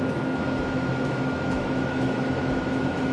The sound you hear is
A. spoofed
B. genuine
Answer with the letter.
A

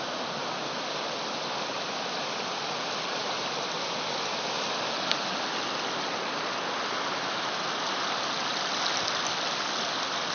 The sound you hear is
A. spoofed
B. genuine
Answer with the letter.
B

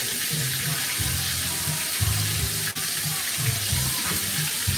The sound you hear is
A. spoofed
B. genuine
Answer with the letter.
B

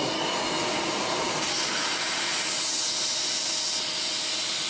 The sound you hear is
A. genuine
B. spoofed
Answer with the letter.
A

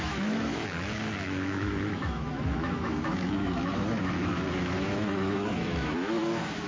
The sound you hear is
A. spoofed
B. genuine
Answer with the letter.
A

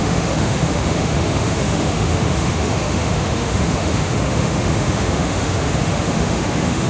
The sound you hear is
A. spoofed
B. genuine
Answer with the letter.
A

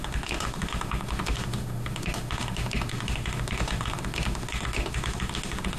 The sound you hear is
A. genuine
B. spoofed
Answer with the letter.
B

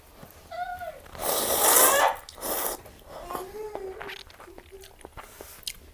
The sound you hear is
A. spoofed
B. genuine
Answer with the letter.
B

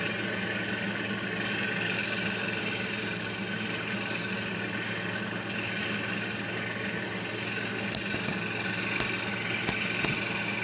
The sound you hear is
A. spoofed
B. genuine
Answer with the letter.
B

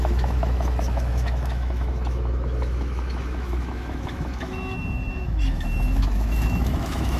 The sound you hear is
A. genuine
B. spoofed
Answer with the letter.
B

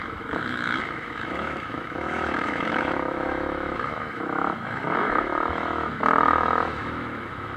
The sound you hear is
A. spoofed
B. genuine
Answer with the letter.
A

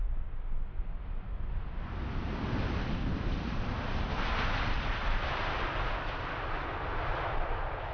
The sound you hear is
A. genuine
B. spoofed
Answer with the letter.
A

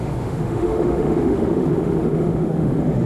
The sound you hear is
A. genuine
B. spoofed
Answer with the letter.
B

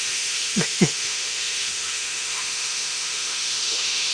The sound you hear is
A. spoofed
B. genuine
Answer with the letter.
A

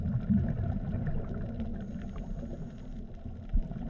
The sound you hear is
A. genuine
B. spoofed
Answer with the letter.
A